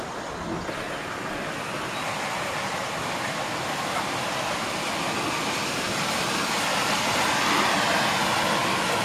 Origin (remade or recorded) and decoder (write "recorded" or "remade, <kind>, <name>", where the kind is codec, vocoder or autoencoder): recorded